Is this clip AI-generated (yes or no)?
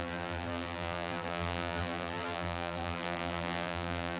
yes